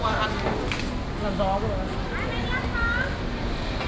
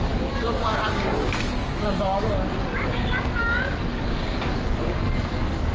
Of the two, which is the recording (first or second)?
first